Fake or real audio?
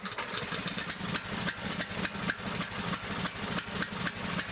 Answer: real